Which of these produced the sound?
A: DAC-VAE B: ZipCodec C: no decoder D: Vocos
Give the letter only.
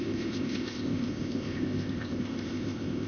B